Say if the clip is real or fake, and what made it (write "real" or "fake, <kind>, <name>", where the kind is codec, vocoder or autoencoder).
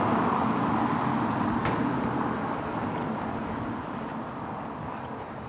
real